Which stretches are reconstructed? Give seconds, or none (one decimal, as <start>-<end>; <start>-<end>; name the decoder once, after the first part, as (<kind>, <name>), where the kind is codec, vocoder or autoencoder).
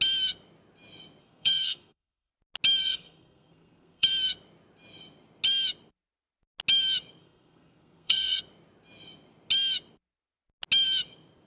1.2-2.3 (codec, SNAC); 2.8-4.1; 7.2-8.4